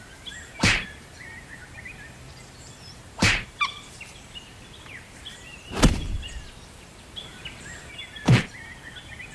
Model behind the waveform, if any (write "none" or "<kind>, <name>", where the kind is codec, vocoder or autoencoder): vocoder, BigVGAN v2